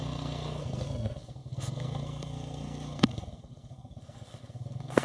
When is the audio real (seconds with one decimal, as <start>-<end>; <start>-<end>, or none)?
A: none